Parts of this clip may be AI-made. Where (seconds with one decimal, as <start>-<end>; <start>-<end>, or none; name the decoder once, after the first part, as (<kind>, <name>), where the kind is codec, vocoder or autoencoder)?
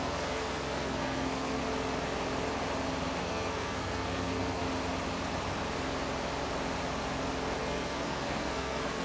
0.0-1.6 (codec, SNAC); 3.2-4.6; 7.6-9.0